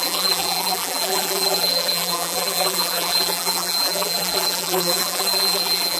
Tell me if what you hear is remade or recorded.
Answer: remade